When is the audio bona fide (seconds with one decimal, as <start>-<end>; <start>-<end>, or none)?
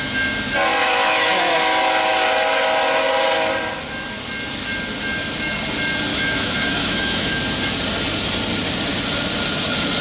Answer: 0.0-0.8; 1.4-6.1; 7.4-10.0